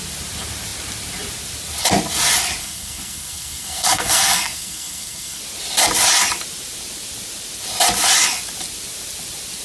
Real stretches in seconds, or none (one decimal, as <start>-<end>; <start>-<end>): 0.0-2.6; 5.4-9.6